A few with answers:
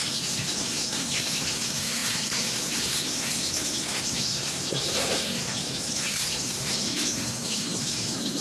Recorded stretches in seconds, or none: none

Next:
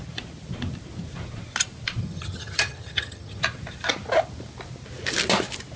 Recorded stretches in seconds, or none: 0.0-2.0; 3.4-5.8

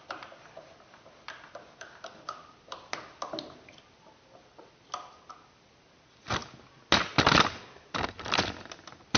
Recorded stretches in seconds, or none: 0.0-9.2

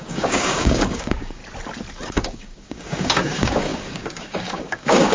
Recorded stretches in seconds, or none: 1.4-2.1

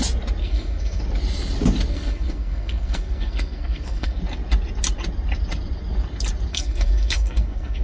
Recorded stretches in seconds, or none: 0.0-0.4; 1.0-1.9; 4.2-6.5

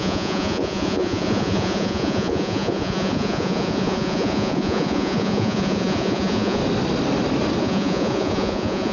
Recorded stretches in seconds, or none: 6.6-7.6

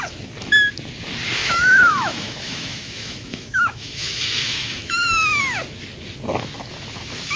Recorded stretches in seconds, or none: 0.0-1.4; 5.4-7.4